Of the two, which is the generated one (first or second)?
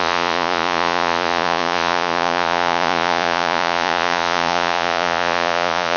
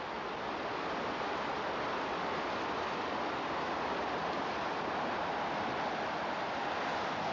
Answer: first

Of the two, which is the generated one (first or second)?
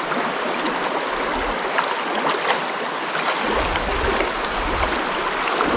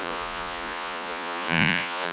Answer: second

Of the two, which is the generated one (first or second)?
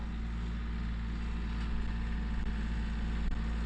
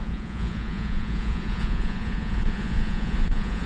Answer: second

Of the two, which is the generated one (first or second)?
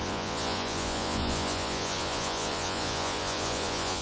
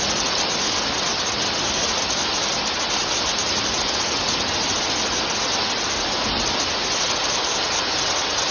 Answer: first